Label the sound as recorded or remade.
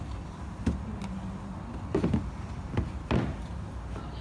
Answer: recorded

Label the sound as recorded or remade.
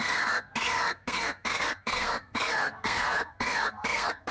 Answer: remade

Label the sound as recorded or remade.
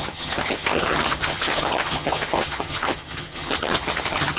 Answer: remade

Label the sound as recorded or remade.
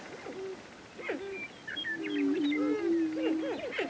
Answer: recorded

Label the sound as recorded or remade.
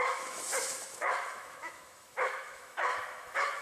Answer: remade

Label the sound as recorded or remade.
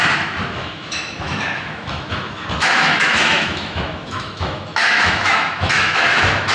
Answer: remade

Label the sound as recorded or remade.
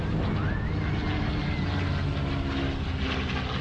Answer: recorded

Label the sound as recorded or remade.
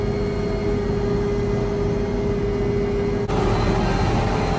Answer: recorded